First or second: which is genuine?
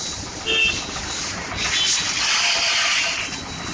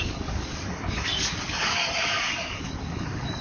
first